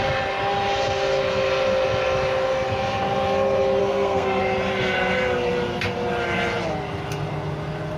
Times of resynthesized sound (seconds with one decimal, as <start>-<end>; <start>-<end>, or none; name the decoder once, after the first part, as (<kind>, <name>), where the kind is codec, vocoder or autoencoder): 3.8-4.4 (codec, SNAC)